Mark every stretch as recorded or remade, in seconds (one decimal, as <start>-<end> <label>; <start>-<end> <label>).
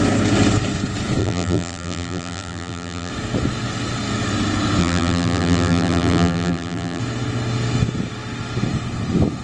0.0-1.2 recorded; 1.2-3.1 remade; 3.1-4.8 recorded; 4.8-7.0 remade; 7.0-9.4 recorded